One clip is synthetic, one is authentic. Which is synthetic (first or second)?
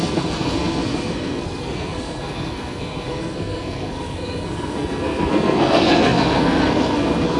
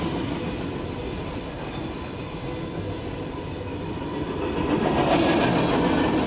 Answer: first